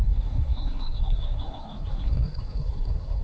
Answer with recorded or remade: remade